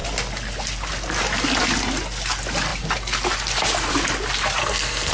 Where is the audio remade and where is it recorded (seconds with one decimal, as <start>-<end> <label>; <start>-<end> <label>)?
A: 0.0-4.6 recorded; 4.6-5.1 remade

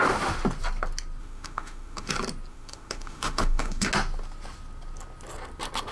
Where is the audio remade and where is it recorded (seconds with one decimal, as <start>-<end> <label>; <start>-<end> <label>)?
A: 0.0-1.2 recorded; 1.2-2.1 remade; 2.1-2.5 recorded; 2.5-3.9 remade; 3.9-5.9 recorded